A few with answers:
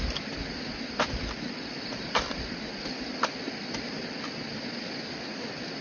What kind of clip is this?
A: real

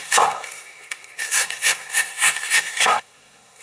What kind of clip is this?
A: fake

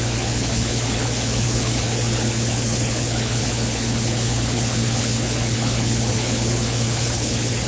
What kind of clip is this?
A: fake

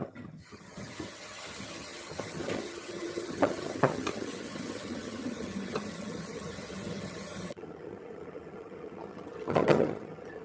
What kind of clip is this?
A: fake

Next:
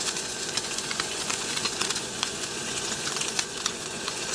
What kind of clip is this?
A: fake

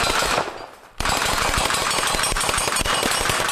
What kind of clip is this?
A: fake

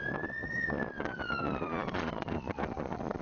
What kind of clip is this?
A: fake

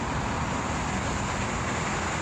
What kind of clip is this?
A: real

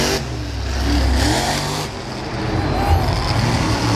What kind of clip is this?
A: real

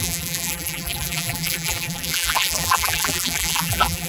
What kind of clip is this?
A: fake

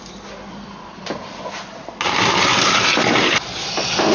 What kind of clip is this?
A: real